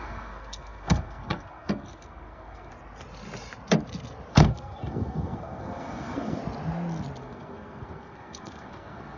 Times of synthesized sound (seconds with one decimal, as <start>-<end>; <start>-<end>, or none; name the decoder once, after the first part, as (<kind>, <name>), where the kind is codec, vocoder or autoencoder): 0.0-2.7 (codec, SNAC); 4.3-6.4; 7.2-9.2